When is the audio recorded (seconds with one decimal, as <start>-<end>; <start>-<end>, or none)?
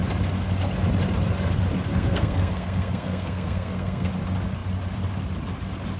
0.0-1.9; 4.1-6.0